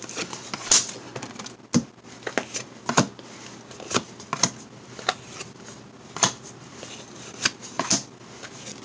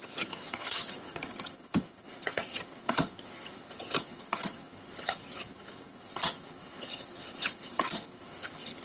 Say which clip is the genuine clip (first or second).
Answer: first